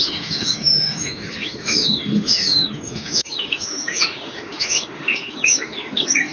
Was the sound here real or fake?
fake